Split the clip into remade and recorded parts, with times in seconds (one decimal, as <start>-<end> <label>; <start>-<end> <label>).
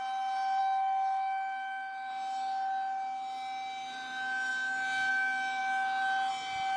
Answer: 0.0-0.6 recorded; 0.6-2.1 remade; 2.1-6.8 recorded